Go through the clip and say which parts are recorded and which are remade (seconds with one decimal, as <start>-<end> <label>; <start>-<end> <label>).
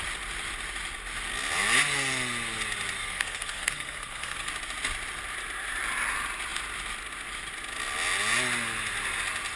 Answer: 0.0-3.0 recorded; 3.0-4.5 remade; 4.5-9.6 recorded